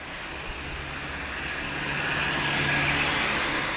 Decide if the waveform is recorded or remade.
recorded